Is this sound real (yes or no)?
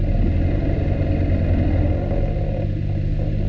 yes